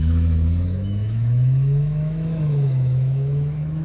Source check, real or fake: fake